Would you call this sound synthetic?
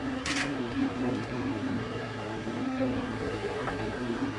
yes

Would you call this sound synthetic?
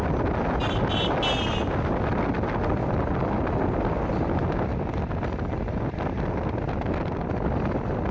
no